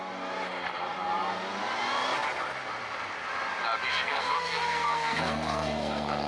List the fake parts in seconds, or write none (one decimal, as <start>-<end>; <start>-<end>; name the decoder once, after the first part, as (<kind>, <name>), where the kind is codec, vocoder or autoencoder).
3.9-6.3 (codec, SNAC)